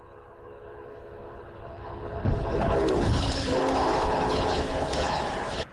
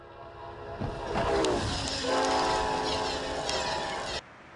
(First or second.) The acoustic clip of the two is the second